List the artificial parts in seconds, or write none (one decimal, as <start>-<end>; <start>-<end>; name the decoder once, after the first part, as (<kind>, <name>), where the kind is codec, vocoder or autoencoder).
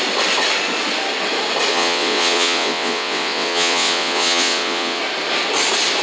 1.7-5.0 (vocoder, WaveNeXt)